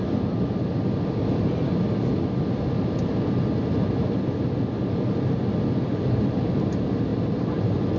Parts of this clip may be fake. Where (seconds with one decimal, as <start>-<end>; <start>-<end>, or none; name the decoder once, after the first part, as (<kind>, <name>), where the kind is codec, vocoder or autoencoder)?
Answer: none